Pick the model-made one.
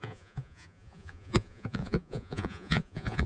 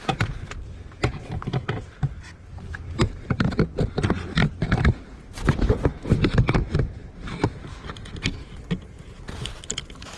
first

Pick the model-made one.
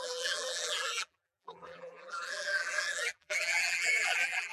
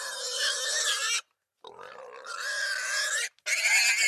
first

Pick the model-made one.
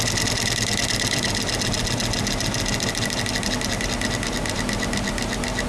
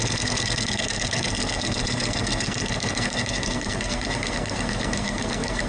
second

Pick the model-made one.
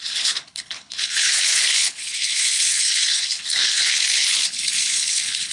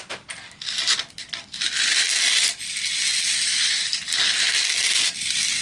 first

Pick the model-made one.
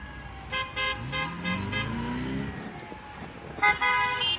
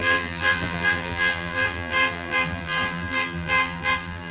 second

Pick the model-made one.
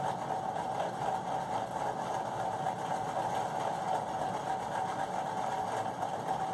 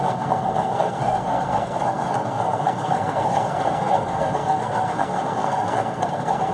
second